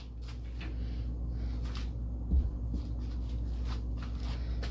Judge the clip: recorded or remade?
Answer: recorded